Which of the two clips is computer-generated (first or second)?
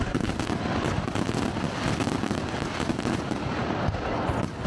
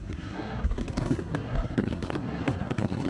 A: second